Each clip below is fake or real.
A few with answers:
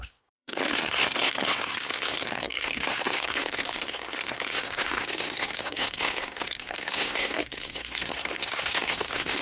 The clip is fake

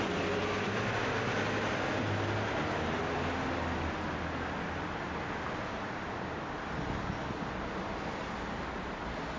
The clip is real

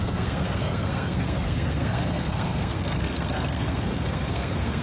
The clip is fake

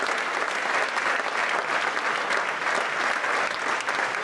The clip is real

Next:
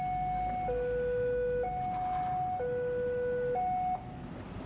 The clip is real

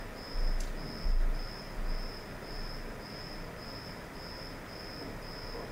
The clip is real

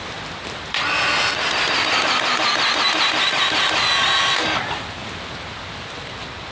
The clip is real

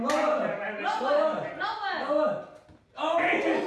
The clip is real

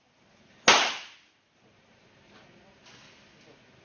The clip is real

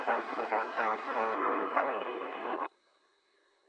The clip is fake